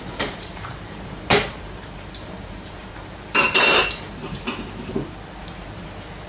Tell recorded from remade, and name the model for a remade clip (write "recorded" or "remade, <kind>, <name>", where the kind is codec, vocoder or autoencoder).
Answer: remade, vocoder, BigVGAN v2